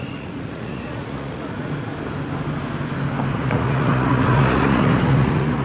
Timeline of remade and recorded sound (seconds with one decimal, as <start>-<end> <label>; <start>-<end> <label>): 0.0-1.9 remade; 1.9-3.3 recorded; 3.3-5.6 remade